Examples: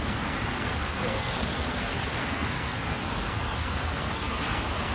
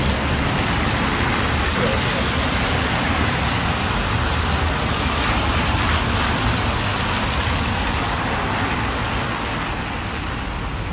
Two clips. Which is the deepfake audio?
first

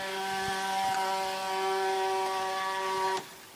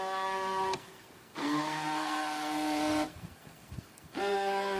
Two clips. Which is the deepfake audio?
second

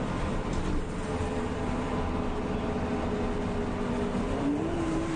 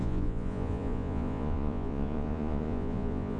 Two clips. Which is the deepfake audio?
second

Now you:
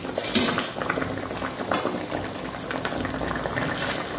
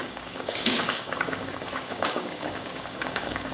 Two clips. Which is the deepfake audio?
second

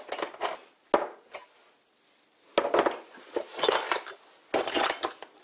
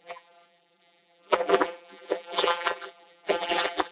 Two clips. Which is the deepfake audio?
second